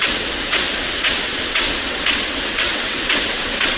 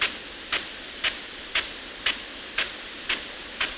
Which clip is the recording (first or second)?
second